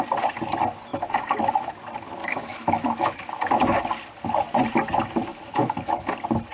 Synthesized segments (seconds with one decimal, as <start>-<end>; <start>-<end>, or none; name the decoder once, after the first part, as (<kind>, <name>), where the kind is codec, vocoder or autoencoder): 0.9-1.7 (autoencoder, DAC-VAE); 2.2-3.8; 5.3-6.1